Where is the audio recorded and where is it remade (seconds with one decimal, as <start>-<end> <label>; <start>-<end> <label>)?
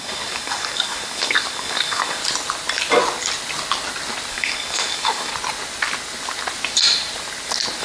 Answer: 0.0-2.2 remade; 2.2-4.3 recorded; 4.3-5.3 remade; 5.3-7.8 recorded